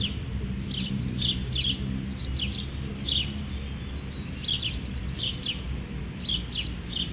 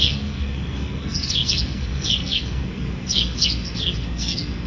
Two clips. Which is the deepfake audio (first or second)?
second